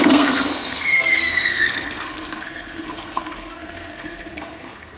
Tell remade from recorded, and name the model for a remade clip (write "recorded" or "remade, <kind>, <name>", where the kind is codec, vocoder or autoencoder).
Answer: remade, codec, SNAC